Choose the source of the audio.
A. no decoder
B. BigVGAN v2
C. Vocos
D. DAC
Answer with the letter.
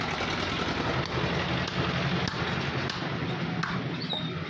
A